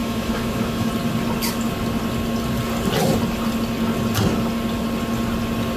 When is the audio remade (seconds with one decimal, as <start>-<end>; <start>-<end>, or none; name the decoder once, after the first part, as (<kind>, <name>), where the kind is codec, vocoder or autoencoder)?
0.0-0.9 (autoencoder, DAC-VAE)